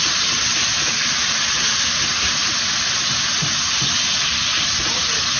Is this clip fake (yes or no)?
no